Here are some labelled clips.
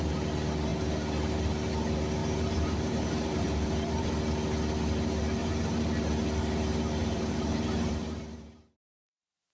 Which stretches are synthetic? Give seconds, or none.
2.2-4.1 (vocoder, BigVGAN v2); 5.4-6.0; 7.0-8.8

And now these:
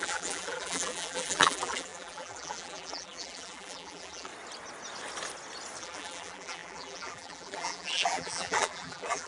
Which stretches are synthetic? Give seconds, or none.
0.0-4.3 (vocoder, BigVGAN v2); 5.8-9.3

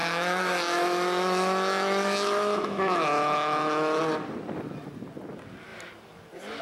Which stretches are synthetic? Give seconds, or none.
0.0-4.0 (autoencoder, DAC-VAE)